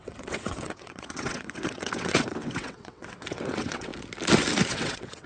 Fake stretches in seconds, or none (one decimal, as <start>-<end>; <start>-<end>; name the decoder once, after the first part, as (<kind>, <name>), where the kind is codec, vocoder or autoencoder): 0.0-3.9 (vocoder, WaveNeXt); 4.7-5.3